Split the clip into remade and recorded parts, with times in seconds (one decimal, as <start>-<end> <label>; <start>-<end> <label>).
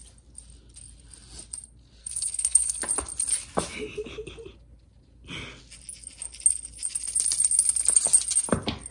0.0-2.0 recorded; 2.0-2.8 remade; 2.8-8.9 recorded